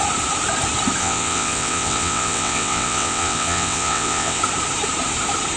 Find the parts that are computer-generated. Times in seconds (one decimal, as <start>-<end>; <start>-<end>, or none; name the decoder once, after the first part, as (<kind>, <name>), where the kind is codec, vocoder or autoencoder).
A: 1.0-4.4 (vocoder, WaveNeXt)